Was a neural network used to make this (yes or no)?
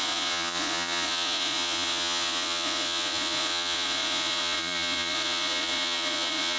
yes